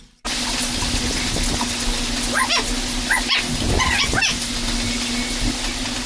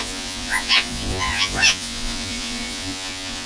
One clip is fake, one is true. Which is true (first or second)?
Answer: first